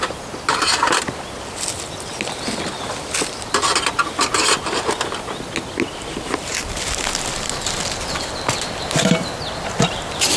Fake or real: real